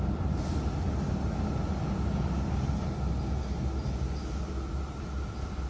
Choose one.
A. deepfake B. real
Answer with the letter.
B